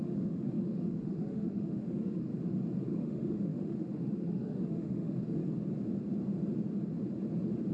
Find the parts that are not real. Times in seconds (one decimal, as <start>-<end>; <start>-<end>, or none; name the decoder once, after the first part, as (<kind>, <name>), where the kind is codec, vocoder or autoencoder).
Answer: 0.0-2.3 (autoencoder, DAC-VAE); 2.9-5.4